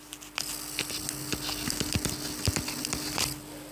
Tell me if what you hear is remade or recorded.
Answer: recorded